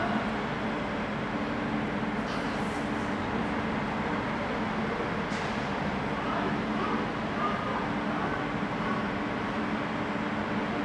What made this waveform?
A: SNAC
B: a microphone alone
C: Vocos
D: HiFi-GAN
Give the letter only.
B